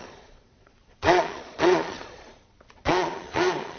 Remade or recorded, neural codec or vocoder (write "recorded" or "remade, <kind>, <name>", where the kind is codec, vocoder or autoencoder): remade, vocoder, Vocos